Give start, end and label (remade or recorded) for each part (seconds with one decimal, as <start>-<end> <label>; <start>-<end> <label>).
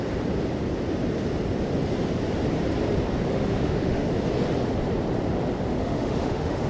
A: 0.0-3.3 recorded; 3.3-4.1 remade; 4.1-5.7 recorded; 5.7-6.7 remade